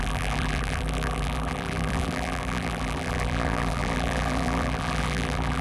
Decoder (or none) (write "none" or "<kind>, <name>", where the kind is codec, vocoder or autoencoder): vocoder, BigVGAN v2